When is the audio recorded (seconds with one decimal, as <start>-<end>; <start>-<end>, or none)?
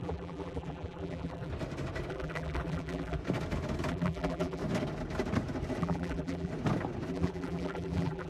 1.5-2.1; 3.2-3.9; 4.6-5.8; 6.5-7.1